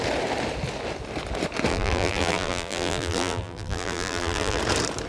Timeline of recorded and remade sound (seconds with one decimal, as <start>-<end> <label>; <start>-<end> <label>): 0.0-1.7 recorded; 1.7-4.6 remade; 4.6-5.1 recorded